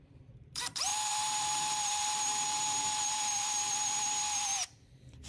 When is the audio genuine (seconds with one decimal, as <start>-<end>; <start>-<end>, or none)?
0.0-0.9; 4.1-5.3